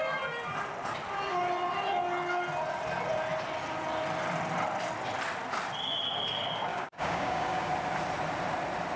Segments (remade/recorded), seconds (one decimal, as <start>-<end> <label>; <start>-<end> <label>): 0.0-6.7 recorded; 6.7-7.7 remade; 7.7-9.0 recorded